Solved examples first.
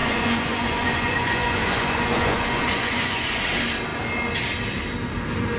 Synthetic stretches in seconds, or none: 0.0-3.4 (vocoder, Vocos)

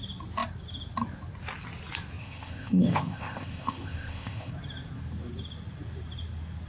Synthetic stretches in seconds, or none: 2.2-4.5 (codec, ZipCodec)